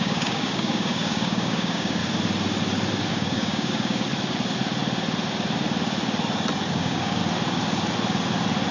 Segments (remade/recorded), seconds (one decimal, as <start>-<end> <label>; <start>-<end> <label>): 0.0-2.0 remade; 2.0-3.1 recorded; 3.1-4.1 remade; 4.1-6.7 recorded; 6.7-7.2 remade; 7.2-8.7 recorded